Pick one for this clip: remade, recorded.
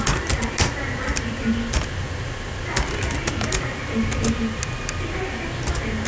recorded